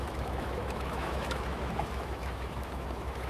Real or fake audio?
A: fake